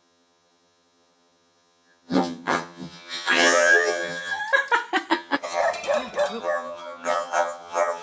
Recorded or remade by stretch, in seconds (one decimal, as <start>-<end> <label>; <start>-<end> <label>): 0.0-4.4 remade; 4.4-5.1 recorded; 5.1-5.6 remade; 5.6-6.4 recorded; 6.4-8.0 remade